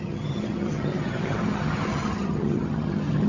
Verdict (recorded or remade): remade